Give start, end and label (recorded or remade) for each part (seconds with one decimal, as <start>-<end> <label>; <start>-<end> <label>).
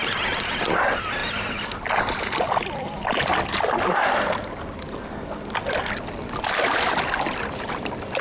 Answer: 0.0-8.2 recorded